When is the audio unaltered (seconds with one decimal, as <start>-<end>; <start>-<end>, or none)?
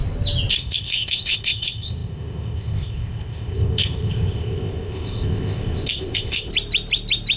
0.0-0.5; 6.5-7.4